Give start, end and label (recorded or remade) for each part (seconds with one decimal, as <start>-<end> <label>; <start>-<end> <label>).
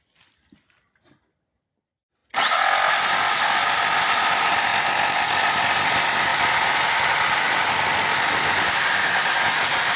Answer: 0.0-10.0 recorded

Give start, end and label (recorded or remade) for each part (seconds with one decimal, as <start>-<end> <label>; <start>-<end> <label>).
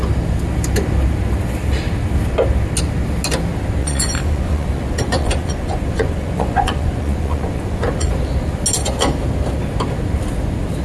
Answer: 0.0-3.8 recorded; 3.8-8.1 remade; 8.1-10.8 recorded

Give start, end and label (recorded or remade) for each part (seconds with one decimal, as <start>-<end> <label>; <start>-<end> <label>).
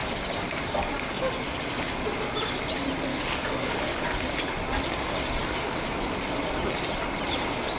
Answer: 0.0-3.1 recorded; 3.1-4.0 remade; 4.0-7.8 recorded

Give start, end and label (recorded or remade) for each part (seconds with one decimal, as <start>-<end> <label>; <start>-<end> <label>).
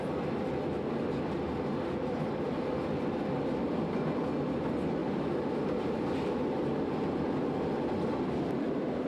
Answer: 0.0-9.1 recorded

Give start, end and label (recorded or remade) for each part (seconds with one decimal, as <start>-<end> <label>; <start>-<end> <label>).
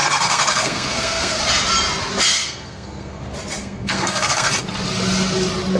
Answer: 0.0-1.4 remade; 1.4-2.3 recorded; 2.3-3.2 remade; 3.2-3.6 recorded; 3.6-4.5 remade; 4.5-5.8 recorded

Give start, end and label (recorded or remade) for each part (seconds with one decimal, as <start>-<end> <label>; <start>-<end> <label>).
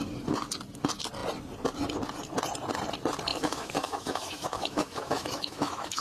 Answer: 0.0-3.3 recorded; 3.3-6.0 remade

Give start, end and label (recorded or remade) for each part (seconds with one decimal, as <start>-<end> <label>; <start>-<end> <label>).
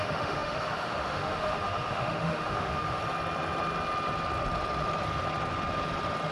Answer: 0.0-3.0 remade; 3.0-6.3 recorded